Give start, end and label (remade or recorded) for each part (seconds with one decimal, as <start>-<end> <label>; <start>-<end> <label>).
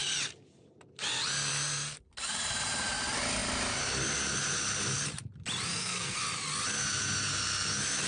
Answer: 0.0-5.7 recorded; 5.7-6.2 remade; 6.2-8.1 recorded